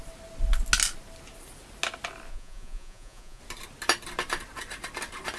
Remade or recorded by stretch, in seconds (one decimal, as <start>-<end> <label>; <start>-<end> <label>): 0.0-2.3 recorded; 2.3-3.4 remade; 3.4-5.4 recorded